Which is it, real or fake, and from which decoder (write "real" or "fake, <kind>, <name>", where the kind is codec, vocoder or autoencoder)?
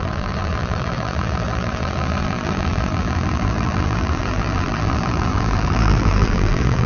fake, vocoder, BigVGAN v2